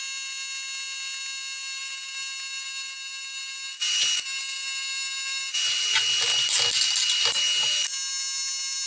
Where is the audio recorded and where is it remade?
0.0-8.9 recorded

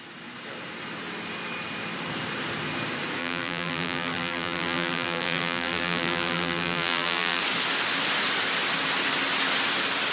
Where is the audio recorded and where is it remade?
0.0-3.2 recorded; 3.2-7.4 remade; 7.4-10.1 recorded

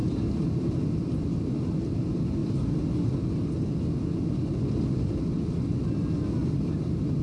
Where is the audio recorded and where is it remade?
0.0-7.2 recorded

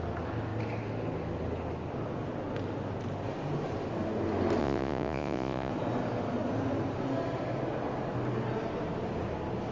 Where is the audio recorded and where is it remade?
0.0-4.6 recorded; 4.6-5.7 remade; 5.7-9.7 recorded

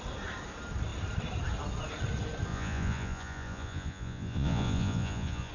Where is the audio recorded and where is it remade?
0.0-2.5 recorded; 2.5-5.5 remade